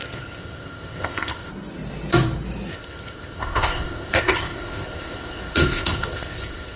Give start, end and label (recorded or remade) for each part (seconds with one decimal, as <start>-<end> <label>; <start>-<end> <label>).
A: 0.0-1.5 remade; 1.5-2.7 recorded; 2.7-6.8 remade